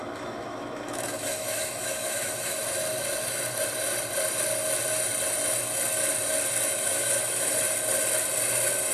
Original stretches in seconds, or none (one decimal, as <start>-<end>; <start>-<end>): 2.6-6.9; 7.5-8.9